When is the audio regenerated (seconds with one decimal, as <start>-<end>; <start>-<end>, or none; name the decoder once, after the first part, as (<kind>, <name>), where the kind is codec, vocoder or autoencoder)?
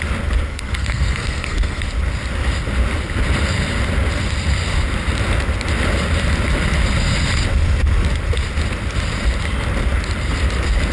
0.5-1.8 (codec, SNAC)